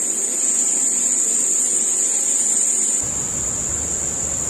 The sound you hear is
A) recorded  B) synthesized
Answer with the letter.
A